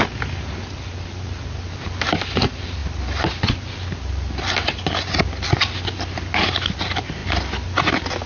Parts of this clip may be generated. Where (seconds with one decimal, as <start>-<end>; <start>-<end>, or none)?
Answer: none